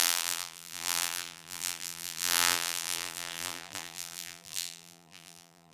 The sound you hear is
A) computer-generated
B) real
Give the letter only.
A